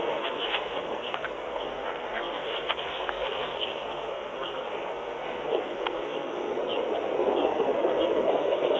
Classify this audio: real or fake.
fake